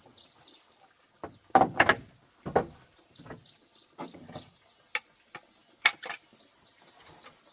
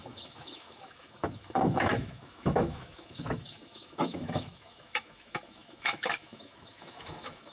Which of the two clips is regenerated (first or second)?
second